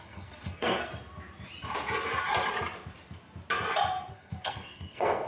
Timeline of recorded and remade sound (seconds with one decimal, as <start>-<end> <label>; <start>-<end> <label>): 0.0-0.9 remade; 0.9-4.1 recorded; 4.1-5.3 remade